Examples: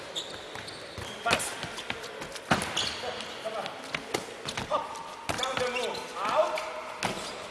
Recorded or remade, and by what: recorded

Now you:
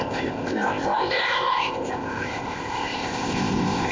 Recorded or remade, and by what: remade, codec, ZipCodec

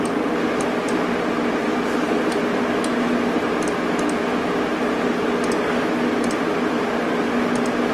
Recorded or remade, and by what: recorded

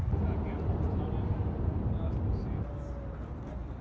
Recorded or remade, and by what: recorded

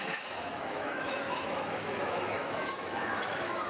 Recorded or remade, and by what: remade, autoencoder, DAC-VAE